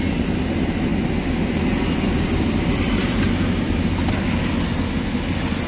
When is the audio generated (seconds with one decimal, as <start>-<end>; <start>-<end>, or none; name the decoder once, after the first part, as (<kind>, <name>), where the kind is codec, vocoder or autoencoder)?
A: none

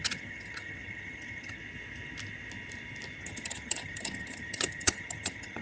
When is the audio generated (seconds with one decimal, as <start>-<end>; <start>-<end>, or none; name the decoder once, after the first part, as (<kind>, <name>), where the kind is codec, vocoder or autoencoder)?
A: 0.0-1.6 (vocoder, HiFi-GAN); 3.2-5.6

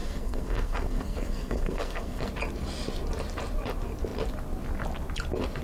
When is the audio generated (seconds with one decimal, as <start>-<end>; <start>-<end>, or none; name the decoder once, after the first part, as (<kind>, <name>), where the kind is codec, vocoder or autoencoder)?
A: 0.0-2.3 (codec, SNAC)

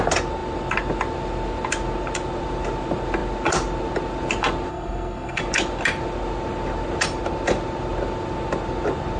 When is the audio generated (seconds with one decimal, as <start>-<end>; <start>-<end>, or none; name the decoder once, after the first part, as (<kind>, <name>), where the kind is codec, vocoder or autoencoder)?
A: 4.7-5.4 (codec, SNAC)

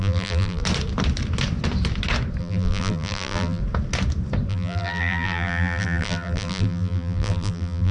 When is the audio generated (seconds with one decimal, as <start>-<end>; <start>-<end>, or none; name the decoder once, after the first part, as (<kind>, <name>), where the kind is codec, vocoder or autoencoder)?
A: 0.0-0.6 (vocoder, BigVGAN v2); 2.4-3.6; 4.5-7.9

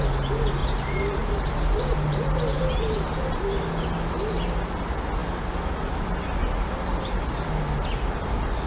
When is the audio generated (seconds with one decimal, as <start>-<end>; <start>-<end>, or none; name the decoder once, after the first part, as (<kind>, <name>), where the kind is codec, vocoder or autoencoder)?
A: 0.6-3.4 (vocoder, BigVGAN v2)

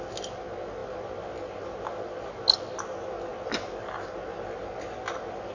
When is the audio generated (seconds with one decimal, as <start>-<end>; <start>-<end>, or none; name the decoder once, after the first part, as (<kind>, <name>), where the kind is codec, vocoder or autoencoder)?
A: none

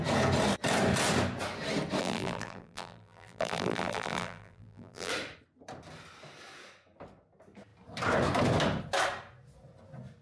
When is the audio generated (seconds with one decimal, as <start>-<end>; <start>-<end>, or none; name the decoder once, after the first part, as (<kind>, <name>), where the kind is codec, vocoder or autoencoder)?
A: 2.0-5.1 (vocoder, BigVGAN v2)